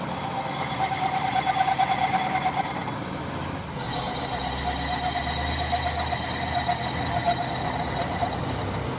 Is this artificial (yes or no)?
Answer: no